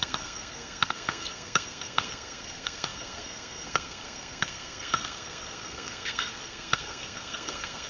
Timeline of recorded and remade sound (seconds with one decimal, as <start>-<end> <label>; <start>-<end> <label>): 0.0-7.9 remade